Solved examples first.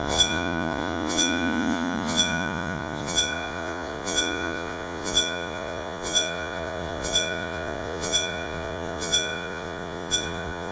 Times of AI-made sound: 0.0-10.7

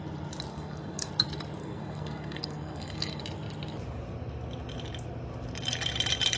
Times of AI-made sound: 0.5-1.1; 1.6-3.2

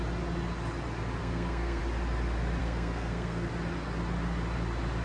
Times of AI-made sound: 1.2-1.8; 2.6-3.5

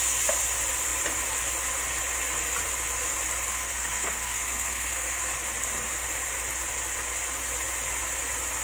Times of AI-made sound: 3.5-5.3

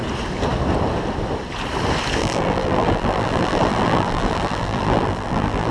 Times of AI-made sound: 2.2-5.7